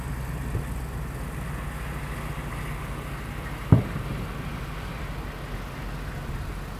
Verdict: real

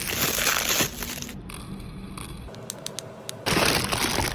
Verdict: real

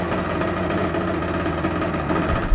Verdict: real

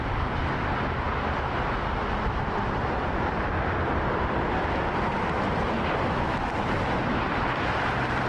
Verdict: fake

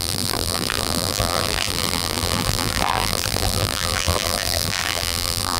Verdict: fake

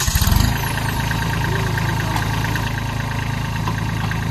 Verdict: real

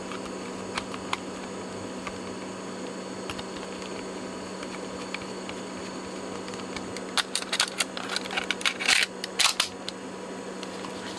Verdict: real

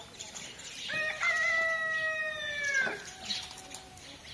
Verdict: real